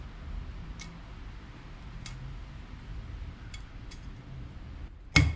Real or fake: real